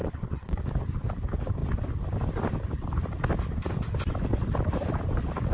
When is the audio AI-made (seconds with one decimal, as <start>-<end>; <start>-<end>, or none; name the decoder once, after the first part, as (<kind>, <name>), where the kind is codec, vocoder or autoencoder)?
0.0-0.6 (vocoder, WaveNeXt)